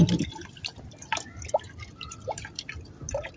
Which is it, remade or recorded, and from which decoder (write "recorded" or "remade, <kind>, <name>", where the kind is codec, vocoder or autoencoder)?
recorded